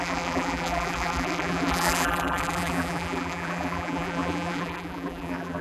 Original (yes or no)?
no